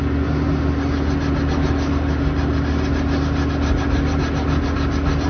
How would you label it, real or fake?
real